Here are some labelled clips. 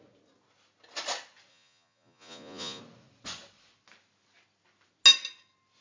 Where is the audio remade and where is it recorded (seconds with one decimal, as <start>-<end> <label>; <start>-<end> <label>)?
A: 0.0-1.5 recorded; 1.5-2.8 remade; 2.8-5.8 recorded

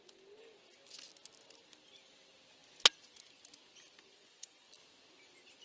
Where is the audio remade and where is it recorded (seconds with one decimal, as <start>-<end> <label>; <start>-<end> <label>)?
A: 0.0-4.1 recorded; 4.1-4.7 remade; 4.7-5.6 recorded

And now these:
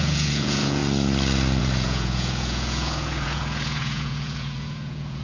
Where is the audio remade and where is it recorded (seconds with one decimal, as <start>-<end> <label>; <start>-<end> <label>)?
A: 0.0-0.8 remade; 0.8-1.6 recorded; 1.6-5.2 remade

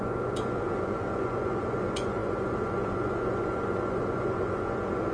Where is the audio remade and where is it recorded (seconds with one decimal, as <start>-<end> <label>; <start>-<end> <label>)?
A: 0.0-5.1 remade

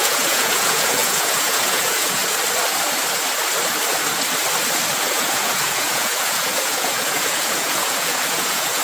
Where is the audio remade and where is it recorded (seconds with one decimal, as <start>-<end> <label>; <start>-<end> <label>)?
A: 0.0-2.2 remade; 2.2-5.0 recorded; 5.0-8.8 remade

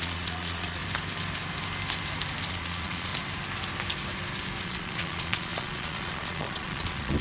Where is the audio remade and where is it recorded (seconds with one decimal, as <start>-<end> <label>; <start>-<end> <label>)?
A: 0.0-0.8 remade; 0.8-2.5 recorded; 2.5-3.1 remade; 3.1-4.6 recorded; 4.6-7.2 remade

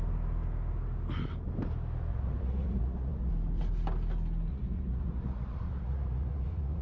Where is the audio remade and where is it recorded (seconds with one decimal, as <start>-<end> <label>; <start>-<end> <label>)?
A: 0.0-2.1 recorded; 2.1-3.3 remade; 3.3-4.5 recorded; 4.5-6.8 remade